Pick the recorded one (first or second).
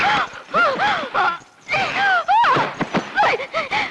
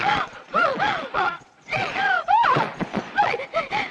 first